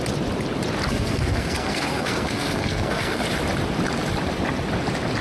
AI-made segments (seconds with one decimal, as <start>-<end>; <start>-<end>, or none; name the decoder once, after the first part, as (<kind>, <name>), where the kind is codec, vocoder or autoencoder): 0.9-3.2 (codec, SNAC)